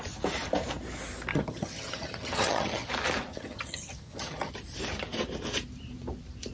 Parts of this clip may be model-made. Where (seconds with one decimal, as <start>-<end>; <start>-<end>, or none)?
1.3-2.9; 3.3-4.5